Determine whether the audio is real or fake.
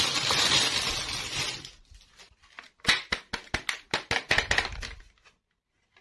real